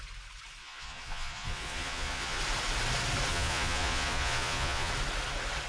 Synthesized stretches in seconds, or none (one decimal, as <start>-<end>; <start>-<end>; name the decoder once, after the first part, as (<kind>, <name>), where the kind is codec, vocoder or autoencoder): 0.6-2.4 (vocoder, Vocos); 3.3-4.9